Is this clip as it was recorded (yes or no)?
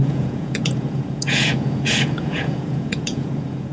no